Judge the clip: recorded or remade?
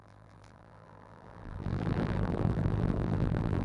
remade